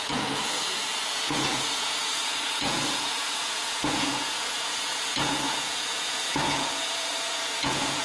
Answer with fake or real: fake